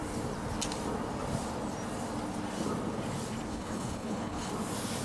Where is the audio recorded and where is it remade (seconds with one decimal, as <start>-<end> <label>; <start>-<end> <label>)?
0.0-3.5 recorded; 3.5-4.5 remade; 4.5-5.0 recorded

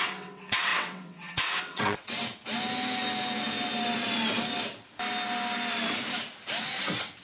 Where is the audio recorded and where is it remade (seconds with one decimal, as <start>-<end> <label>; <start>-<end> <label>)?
0.0-2.4 remade; 2.4-6.6 recorded; 6.6-7.2 remade

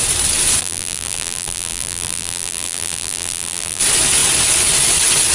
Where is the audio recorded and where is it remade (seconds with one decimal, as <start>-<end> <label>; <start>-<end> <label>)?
0.0-0.6 recorded; 0.6-3.8 remade; 3.8-5.3 recorded